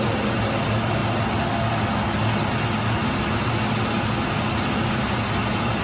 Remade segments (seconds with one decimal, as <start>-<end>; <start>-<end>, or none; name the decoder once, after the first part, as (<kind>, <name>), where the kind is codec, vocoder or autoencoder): none